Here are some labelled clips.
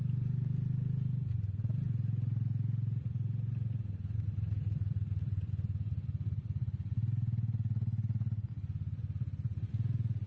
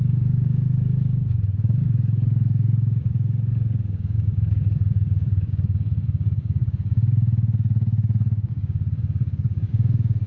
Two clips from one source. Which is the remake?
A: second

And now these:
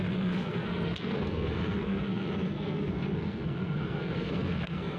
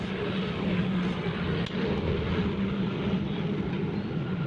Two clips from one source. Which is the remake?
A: first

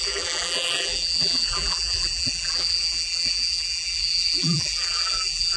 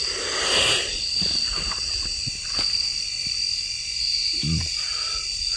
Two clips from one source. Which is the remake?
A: first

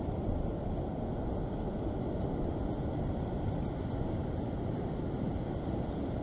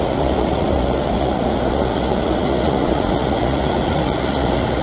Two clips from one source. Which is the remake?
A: second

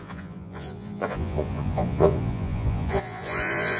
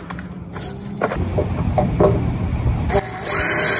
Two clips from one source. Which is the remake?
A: first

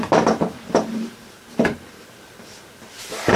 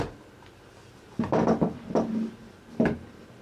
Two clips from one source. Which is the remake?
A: first